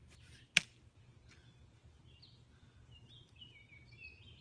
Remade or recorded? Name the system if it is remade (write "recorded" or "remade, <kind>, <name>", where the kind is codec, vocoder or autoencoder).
recorded